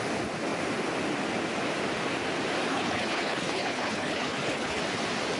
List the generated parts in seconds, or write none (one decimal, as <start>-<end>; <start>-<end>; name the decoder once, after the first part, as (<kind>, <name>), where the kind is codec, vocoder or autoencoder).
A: 2.7-4.8 (codec, HILCodec)